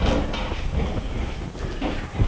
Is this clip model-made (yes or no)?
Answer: no